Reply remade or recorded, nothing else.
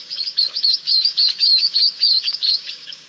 remade